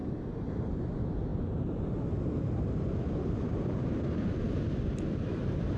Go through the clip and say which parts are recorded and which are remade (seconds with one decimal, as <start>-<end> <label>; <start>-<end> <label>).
0.0-5.8 recorded